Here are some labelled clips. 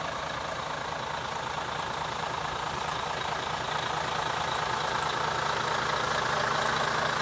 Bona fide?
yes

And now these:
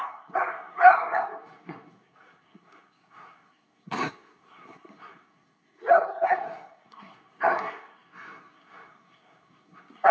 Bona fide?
no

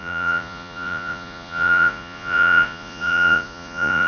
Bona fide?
no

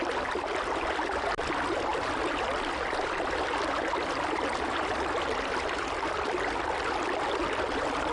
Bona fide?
yes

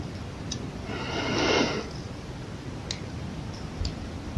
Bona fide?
yes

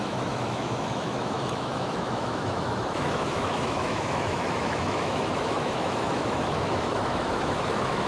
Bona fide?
no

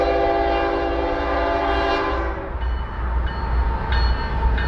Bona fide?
yes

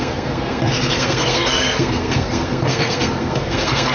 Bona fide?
no